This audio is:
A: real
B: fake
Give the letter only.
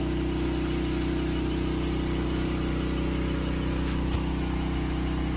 A